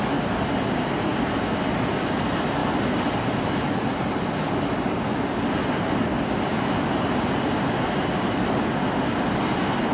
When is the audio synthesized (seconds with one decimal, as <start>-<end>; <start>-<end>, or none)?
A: none